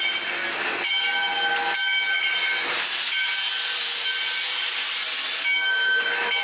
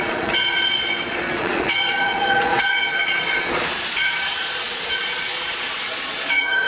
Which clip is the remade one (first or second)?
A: second